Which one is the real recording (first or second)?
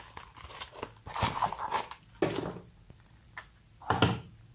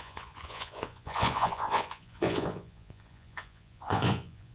first